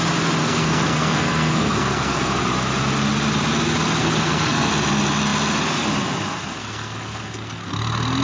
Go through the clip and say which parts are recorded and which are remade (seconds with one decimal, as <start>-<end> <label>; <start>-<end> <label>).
0.0-0.4 recorded; 0.4-2.3 remade; 2.3-4.0 recorded; 4.0-4.7 remade; 4.7-6.6 recorded; 6.6-7.7 remade; 7.7-8.2 recorded